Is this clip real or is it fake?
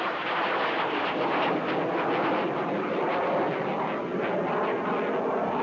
real